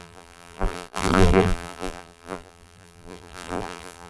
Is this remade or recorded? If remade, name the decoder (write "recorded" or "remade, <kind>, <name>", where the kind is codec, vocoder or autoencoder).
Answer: remade, vocoder, BigVGAN v2